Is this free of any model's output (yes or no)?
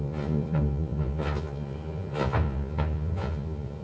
no